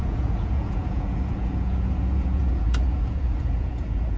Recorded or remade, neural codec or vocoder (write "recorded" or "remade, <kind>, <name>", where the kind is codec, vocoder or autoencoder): remade, vocoder, Vocos